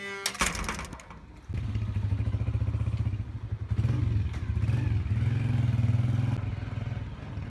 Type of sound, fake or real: real